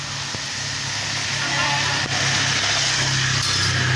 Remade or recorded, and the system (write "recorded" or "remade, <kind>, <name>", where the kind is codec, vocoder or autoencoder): recorded